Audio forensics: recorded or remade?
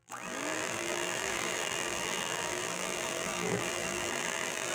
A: remade